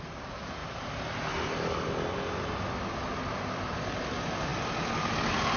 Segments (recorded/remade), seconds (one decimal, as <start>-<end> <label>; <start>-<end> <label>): 0.0-5.6 recorded